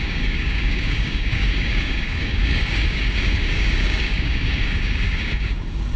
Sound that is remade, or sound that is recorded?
remade